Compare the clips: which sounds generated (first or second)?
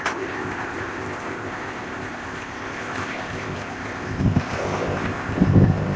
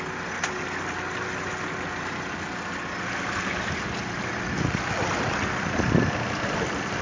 first